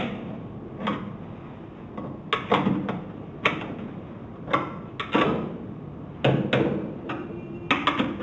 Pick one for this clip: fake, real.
real